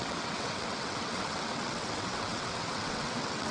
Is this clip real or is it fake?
fake